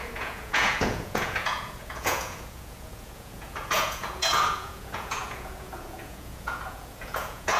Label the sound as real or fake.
fake